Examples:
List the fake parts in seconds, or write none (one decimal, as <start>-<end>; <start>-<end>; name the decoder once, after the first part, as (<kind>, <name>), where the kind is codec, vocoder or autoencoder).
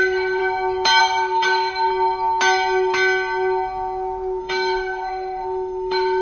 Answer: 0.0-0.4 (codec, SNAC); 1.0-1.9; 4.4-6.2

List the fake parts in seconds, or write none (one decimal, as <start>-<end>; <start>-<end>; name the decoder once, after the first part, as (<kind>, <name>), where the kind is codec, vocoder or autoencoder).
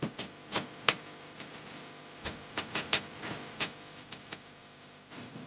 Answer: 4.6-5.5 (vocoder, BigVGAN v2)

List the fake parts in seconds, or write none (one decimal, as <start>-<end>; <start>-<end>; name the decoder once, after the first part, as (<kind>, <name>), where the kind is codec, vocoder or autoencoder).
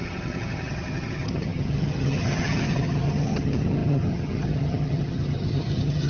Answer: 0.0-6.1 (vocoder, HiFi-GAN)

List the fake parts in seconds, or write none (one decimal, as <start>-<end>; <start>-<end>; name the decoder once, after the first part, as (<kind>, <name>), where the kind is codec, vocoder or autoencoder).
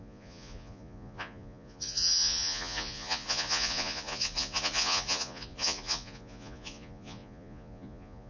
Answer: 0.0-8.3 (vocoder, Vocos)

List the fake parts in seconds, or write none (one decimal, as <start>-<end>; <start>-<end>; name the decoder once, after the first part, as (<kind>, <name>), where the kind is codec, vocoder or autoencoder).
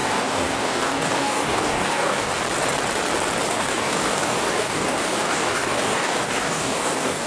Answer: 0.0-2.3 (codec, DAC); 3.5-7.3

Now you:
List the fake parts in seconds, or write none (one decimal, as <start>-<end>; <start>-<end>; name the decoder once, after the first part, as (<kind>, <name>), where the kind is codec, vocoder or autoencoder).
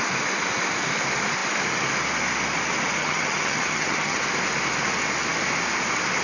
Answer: 3.0-4.2 (vocoder, HiFi-GAN)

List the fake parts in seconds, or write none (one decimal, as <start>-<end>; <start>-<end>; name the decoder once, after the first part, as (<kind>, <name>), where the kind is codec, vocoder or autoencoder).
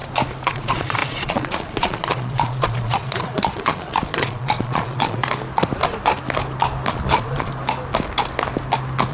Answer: 0.5-5.2 (vocoder, Vocos); 6.9-7.5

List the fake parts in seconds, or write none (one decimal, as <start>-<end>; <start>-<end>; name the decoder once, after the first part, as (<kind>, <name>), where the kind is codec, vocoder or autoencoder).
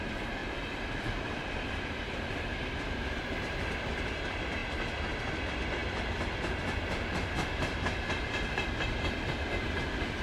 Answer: 0.0-0.4 (vocoder, BigVGAN v2); 1.0-4.6; 5.3-5.8; 8.7-10.2